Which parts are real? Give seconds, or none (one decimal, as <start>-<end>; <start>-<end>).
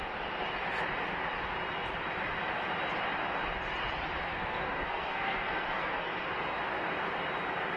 0.0-4.3; 6.4-7.8